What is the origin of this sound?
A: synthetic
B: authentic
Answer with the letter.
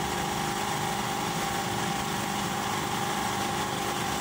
B